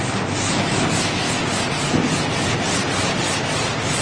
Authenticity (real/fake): real